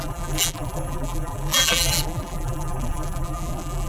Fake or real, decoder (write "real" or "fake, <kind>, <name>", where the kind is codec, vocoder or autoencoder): fake, vocoder, BigVGAN v2